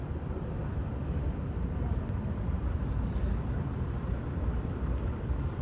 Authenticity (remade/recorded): remade